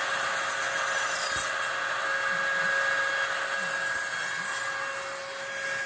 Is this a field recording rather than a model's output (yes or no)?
yes